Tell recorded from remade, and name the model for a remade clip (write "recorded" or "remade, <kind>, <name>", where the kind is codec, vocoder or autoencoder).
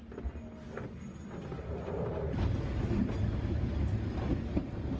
recorded